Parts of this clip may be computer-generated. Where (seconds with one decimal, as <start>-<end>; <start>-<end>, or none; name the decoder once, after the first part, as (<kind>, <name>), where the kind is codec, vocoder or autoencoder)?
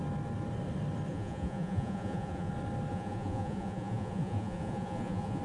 1.1-2.5 (vocoder, Vocos); 2.9-5.4